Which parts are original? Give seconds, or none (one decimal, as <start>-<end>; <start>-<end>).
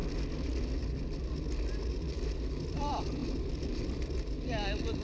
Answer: 0.0-1.9